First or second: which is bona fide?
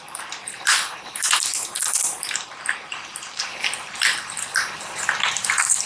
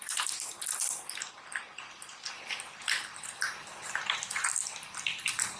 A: second